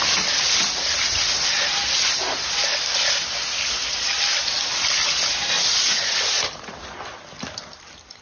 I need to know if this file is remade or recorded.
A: recorded